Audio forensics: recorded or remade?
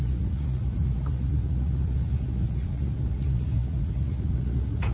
remade